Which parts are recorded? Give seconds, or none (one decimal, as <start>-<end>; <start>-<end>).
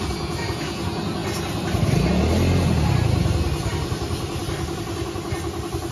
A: 0.0-5.9